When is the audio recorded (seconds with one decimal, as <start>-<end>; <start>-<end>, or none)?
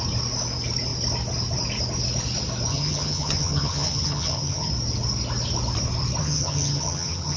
0.0-2.7; 4.7-6.2